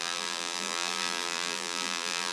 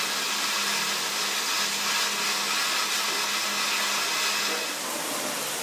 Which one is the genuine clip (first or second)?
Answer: second